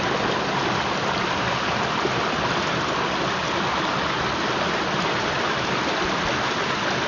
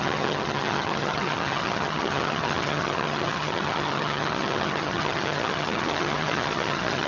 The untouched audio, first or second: first